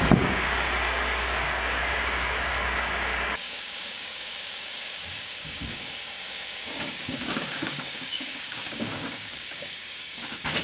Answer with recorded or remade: remade